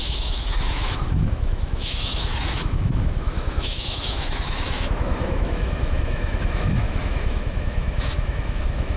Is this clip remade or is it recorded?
remade